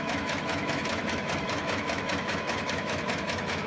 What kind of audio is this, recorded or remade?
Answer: remade